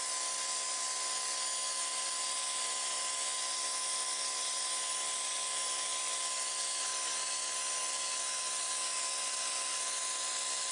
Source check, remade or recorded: recorded